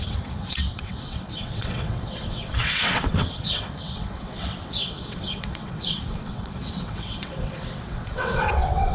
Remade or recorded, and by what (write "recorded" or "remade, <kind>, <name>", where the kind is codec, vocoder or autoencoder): remade, vocoder, WaveNeXt